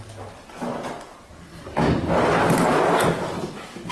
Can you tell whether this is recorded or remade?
recorded